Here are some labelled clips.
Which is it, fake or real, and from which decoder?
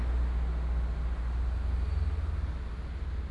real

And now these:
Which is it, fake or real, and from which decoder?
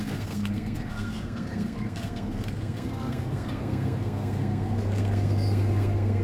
fake, codec, SNAC